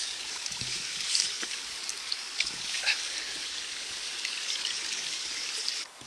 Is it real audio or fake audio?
fake